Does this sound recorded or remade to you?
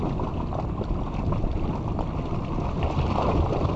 recorded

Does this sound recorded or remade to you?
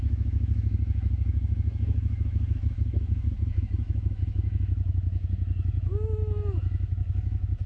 remade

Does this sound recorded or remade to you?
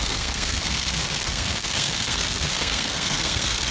remade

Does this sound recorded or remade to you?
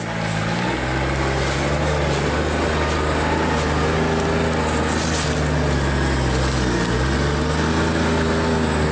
recorded